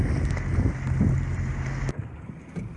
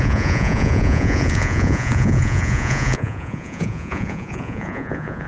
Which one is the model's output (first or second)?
second